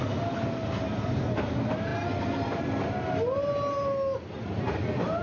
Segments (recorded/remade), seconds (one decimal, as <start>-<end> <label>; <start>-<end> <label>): 0.0-5.2 recorded